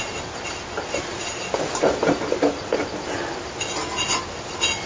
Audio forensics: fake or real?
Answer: real